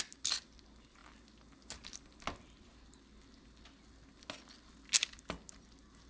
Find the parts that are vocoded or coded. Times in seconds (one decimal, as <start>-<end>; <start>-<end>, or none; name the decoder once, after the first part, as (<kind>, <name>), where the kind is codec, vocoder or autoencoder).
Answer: none